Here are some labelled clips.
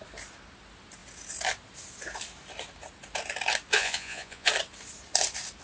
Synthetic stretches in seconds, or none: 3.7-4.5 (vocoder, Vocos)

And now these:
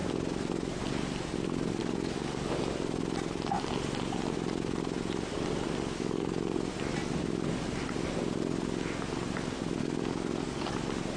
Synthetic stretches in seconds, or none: 1.8-2.6 (codec, DAC); 9.8-10.7

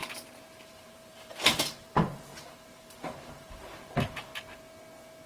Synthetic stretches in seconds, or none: 0.6-4.3 (vocoder, BigVGAN v2)

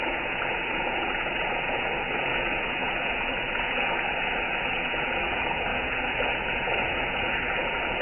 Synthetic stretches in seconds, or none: 0.0-8.0 (vocoder, Vocos)

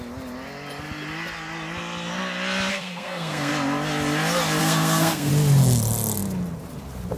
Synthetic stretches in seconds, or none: 2.7-3.5 (codec, SNAC); 4.6-5.3

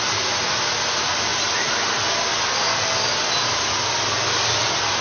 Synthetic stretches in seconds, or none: none

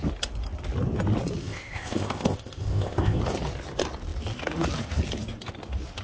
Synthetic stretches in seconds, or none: 1.4-3.2 (codec, ZipCodec)